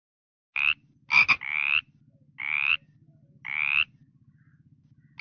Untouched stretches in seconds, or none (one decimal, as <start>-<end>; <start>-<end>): 0.0-5.2